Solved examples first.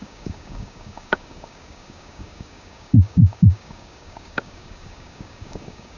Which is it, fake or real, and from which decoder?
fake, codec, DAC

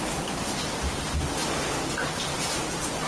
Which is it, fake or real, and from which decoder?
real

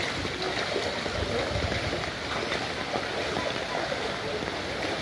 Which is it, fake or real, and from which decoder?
real